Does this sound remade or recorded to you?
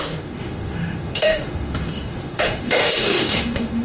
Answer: remade